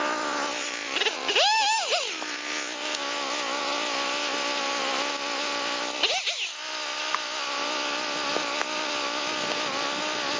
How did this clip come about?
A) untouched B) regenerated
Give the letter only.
A